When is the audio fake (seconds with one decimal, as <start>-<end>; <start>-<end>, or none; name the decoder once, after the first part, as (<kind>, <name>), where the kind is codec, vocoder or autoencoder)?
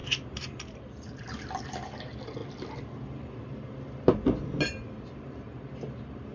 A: none